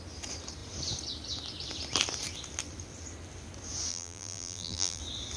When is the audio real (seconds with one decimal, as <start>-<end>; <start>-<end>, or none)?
0.0-3.9; 5.0-5.4